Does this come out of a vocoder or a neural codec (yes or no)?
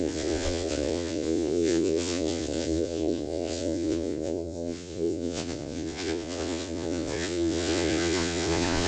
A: yes